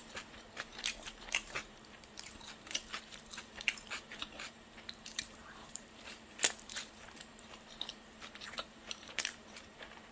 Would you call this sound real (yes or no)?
no